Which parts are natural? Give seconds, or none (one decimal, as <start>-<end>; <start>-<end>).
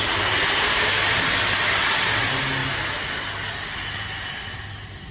0.0-5.1